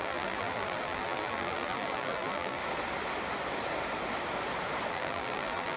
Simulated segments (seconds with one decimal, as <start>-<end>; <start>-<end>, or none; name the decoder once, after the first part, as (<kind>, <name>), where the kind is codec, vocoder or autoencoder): 0.0-2.6 (vocoder, BigVGAN v2); 4.9-5.8